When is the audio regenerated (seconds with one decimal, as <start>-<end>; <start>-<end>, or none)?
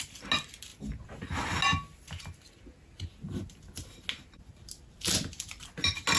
none